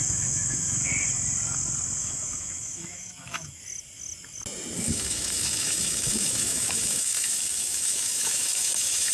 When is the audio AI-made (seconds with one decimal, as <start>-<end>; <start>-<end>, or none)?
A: 0.0-0.9; 2.0-3.6; 4.9-9.1